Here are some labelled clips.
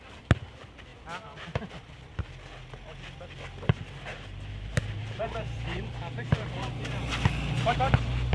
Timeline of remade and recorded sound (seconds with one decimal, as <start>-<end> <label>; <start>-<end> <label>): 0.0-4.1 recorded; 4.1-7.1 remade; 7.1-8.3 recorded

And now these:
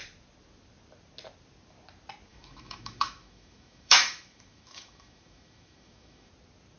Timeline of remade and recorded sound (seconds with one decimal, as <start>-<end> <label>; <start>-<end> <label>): 0.0-2.3 recorded; 2.3-6.3 remade; 6.3-6.8 recorded

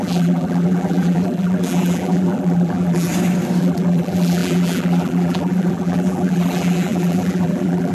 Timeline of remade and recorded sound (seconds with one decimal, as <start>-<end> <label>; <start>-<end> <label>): 0.0-3.1 remade; 3.1-3.6 recorded; 3.6-7.9 remade

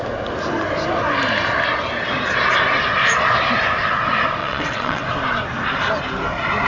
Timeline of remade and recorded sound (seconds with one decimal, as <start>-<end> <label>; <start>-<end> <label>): 0.0-4.4 recorded; 4.4-5.0 remade; 5.0-6.7 recorded

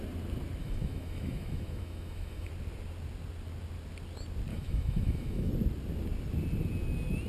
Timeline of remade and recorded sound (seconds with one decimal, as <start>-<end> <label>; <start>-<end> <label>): 0.0-0.6 recorded; 0.6-2.5 remade; 2.5-4.5 recorded; 4.5-5.5 remade; 5.5-7.3 recorded

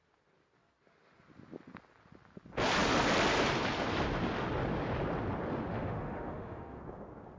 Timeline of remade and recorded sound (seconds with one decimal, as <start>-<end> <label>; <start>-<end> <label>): 0.0-5.7 recorded; 5.7-6.8 remade; 6.8-7.4 recorded

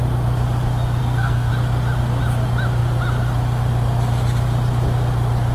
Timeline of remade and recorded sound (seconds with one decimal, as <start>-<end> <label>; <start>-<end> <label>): 0.0-1.0 recorded; 1.0-1.5 remade; 1.5-5.5 recorded

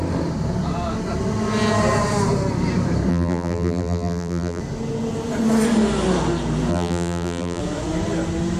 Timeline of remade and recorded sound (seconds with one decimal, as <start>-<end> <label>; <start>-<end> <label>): 0.0-3.1 recorded; 3.1-4.6 remade; 4.6-6.7 recorded; 6.7-7.6 remade; 7.6-8.6 recorded